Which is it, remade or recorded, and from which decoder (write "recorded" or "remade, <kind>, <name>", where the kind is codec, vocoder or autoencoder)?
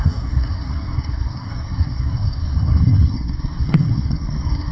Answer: remade, codec, SNAC